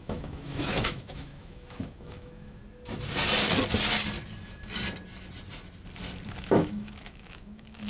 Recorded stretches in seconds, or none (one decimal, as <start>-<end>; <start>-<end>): 2.6-6.4